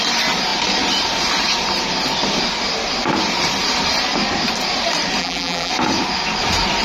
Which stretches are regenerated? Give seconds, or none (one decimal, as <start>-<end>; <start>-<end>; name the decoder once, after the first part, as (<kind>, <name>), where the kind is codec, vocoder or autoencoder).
5.2-5.7 (vocoder, BigVGAN v2)